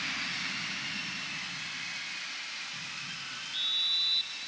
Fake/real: real